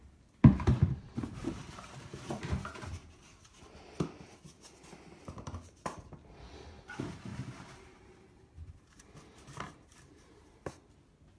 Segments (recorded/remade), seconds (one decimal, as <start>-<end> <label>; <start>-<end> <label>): 0.0-0.8 recorded; 0.8-2.6 remade; 2.6-3.0 recorded; 3.0-3.8 remade; 3.8-7.3 recorded; 7.3-10.7 remade; 10.7-11.4 recorded